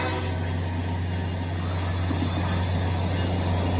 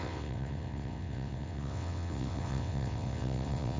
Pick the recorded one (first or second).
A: first